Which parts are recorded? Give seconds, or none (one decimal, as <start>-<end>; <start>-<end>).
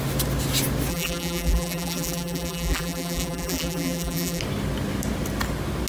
0.0-0.9; 4.4-5.9